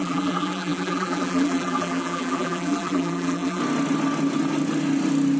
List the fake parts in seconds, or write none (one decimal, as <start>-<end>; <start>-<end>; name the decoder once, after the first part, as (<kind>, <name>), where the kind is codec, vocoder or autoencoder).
0.0-3.6 (vocoder, BigVGAN v2)